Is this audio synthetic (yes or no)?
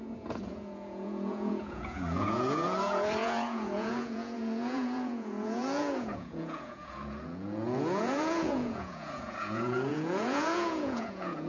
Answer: yes